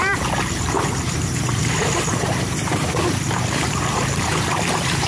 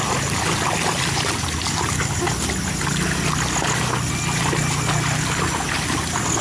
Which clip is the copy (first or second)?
first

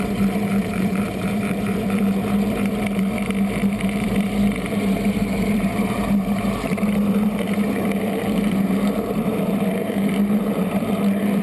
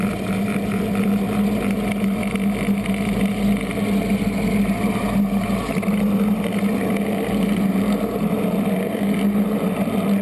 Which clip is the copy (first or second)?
first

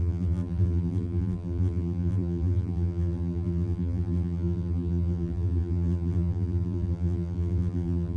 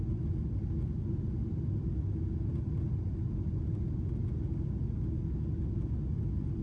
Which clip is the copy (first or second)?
first